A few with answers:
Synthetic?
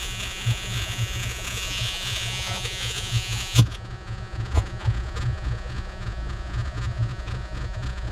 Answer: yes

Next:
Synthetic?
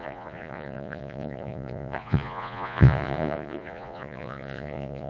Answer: yes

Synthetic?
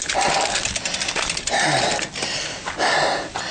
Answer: no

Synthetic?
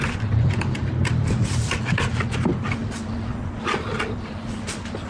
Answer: no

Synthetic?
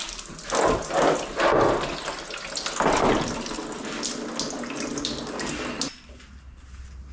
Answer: no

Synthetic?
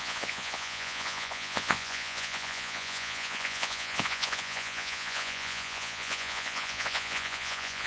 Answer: yes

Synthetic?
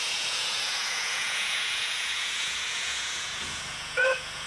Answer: yes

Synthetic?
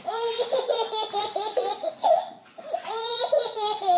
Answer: yes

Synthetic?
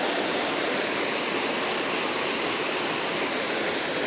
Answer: no